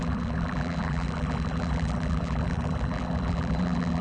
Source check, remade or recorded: remade